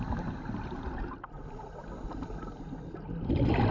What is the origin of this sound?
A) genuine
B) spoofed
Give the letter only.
A